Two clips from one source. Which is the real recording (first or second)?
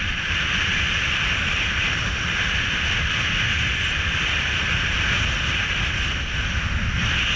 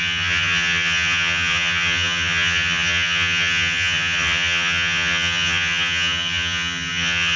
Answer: first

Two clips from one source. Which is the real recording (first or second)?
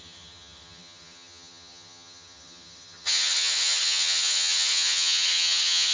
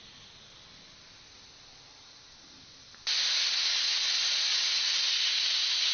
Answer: second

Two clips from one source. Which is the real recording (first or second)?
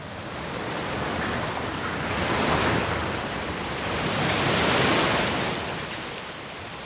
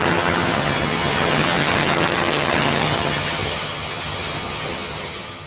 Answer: first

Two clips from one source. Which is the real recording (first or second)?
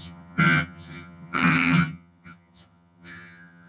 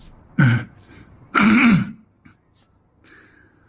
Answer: second